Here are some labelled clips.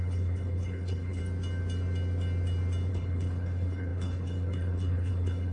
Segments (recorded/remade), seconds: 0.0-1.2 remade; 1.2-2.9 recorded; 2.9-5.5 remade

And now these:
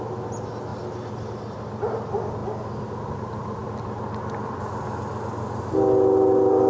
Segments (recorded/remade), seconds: 0.0-6.7 recorded

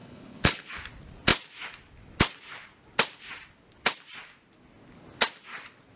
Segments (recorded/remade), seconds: 0.0-0.7 remade; 0.7-6.0 recorded

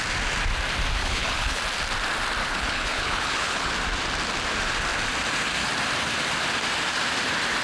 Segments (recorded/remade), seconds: 0.0-1.0 recorded; 1.0-1.6 remade; 1.6-2.4 recorded; 2.4-3.7 remade; 3.7-7.6 recorded